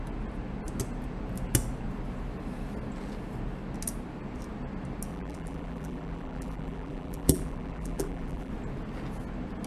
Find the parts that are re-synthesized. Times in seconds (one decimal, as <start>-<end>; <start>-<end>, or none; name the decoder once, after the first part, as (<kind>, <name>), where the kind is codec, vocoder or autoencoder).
5.1-8.5 (vocoder, BigVGAN v2)